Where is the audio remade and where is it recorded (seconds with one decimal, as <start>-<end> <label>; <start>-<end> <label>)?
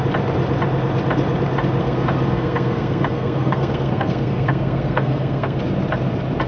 0.0-1.8 recorded; 1.8-5.6 remade; 5.6-6.5 recorded